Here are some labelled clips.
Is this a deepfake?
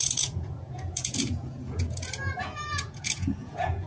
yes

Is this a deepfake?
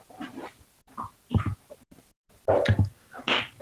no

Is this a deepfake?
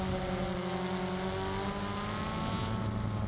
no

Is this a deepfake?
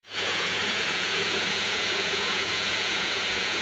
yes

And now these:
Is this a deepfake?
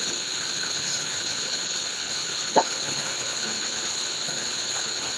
yes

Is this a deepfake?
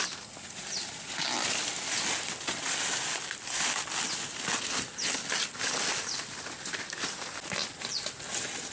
no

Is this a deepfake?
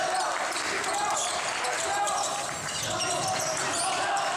no